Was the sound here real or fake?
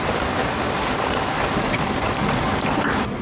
real